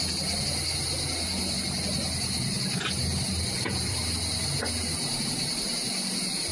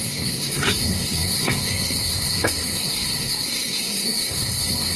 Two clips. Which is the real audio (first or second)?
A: first